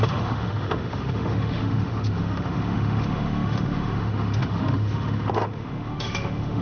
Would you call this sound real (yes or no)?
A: no